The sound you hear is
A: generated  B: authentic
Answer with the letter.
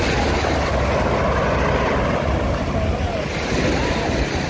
B